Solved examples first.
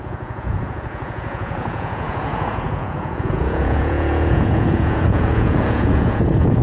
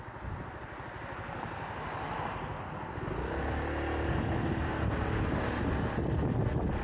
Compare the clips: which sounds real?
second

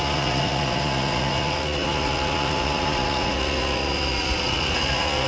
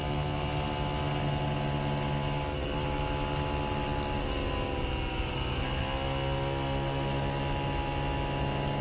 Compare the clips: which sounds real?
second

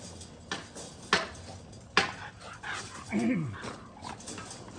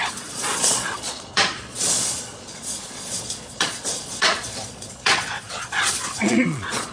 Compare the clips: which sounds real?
first